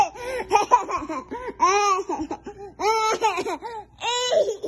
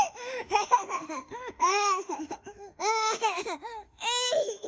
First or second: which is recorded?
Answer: first